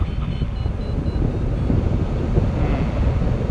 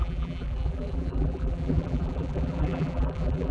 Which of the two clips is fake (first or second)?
second